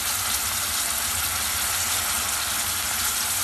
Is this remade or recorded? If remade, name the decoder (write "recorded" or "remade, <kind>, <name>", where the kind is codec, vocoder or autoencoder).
recorded